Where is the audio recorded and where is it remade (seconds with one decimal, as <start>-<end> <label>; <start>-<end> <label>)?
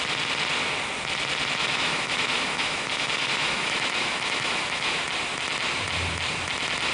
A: 0.0-1.6 recorded; 1.6-5.0 remade; 5.0-6.9 recorded